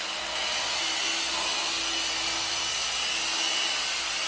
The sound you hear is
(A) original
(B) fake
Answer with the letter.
A